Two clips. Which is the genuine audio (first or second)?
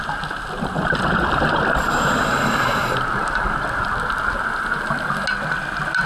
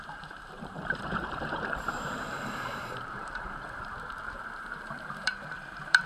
first